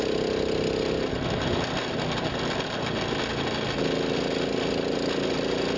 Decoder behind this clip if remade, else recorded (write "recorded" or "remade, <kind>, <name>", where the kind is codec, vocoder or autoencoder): recorded